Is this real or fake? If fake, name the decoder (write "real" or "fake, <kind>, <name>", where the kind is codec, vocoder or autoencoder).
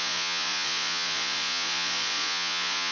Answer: fake, vocoder, Vocos